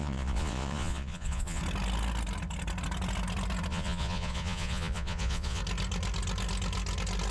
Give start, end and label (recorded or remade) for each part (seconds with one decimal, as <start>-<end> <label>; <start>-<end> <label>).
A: 0.0-1.6 remade; 1.6-3.7 recorded; 3.7-5.6 remade; 5.6-7.3 recorded